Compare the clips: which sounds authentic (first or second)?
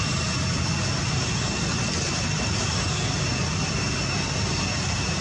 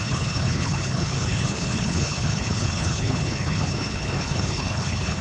first